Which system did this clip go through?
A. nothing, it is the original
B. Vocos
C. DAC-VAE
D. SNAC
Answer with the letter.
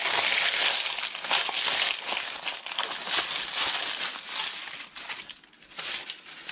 A